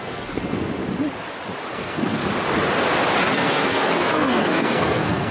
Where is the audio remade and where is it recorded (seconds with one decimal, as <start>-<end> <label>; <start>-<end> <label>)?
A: 0.0-0.8 remade; 0.8-1.7 recorded; 1.7-2.2 remade; 2.2-3.3 recorded; 3.3-5.3 remade